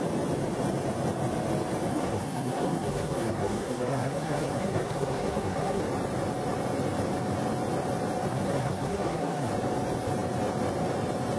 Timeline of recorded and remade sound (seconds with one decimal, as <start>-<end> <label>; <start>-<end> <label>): 0.0-1.9 recorded; 1.9-5.8 remade; 5.8-8.3 recorded; 8.3-9.5 remade; 9.5-11.4 recorded